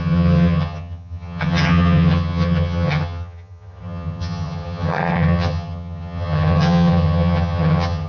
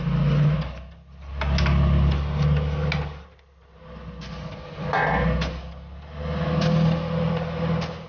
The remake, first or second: first